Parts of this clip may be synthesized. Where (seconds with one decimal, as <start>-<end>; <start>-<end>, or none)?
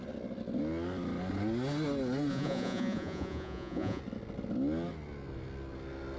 2.3-4.0